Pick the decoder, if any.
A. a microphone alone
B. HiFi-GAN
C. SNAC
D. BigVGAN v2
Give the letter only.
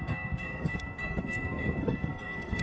C